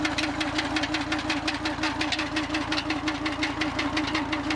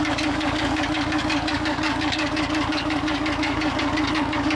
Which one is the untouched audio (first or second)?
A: first